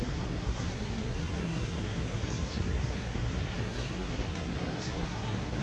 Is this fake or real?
fake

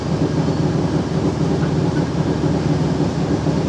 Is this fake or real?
real